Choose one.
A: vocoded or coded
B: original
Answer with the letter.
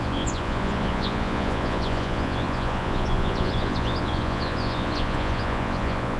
A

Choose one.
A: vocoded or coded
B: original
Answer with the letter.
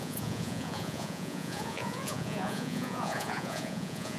A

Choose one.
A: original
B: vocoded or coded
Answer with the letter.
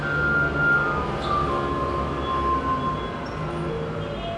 A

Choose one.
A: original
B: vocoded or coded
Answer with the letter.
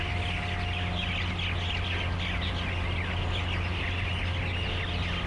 A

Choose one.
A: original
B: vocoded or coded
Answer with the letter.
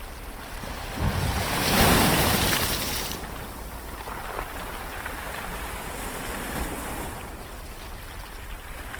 A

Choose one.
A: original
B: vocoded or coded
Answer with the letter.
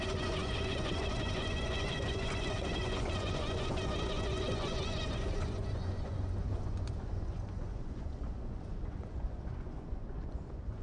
B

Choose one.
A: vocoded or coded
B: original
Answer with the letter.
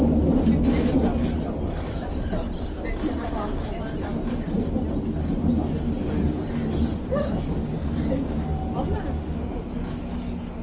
B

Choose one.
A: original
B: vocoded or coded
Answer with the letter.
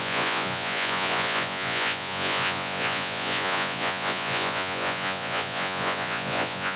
B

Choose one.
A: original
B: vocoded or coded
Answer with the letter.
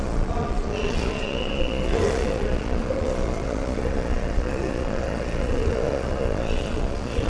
B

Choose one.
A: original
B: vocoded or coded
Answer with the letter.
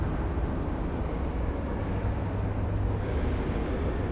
A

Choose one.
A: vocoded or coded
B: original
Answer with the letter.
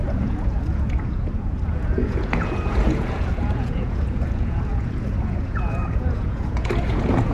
A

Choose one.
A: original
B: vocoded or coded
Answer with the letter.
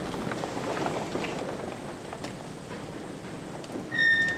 A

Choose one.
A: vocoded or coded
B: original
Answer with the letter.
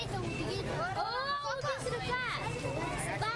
B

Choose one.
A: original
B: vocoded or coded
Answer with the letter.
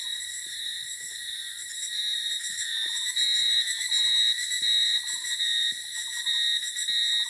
A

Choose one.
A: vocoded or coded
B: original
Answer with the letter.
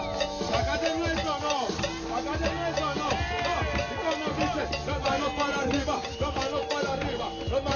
B